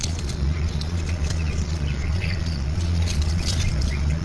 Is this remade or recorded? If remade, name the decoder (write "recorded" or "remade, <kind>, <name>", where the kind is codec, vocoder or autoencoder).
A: remade, vocoder, Vocos